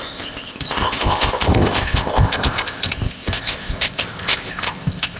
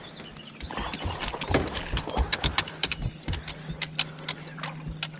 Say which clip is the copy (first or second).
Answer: first